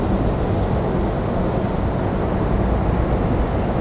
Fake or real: real